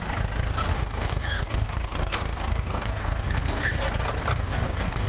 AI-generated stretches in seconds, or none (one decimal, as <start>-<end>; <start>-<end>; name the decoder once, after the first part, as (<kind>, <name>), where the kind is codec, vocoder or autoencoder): 0.7-3.8 (codec, DAC); 4.3-5.1